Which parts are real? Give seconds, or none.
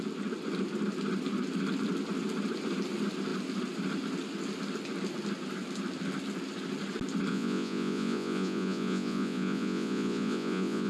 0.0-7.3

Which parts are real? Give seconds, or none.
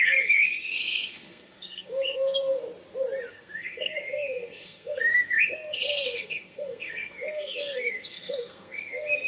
2.6-3.3